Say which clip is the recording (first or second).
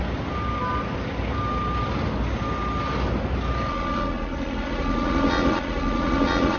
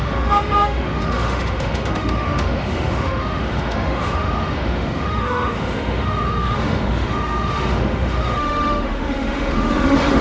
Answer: first